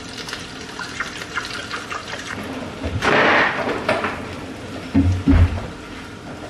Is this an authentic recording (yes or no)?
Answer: yes